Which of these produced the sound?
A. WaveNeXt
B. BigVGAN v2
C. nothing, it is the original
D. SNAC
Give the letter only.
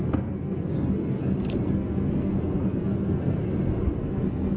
D